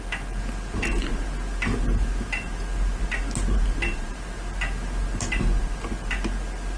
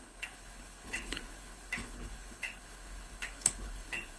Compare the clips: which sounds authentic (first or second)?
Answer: first